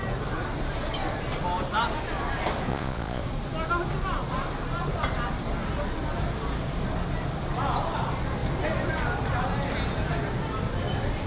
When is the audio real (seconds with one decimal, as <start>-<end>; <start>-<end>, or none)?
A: 0.0-2.7; 3.2-11.3